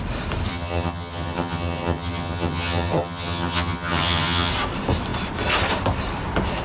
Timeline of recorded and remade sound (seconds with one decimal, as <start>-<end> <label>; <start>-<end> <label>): 0.0-0.5 recorded; 0.5-4.5 remade; 4.5-6.6 recorded